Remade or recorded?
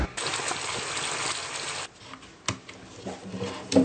recorded